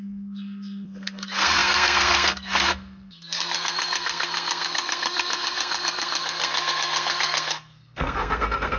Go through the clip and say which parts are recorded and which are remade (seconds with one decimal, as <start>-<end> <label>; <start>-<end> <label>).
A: 0.0-8.8 remade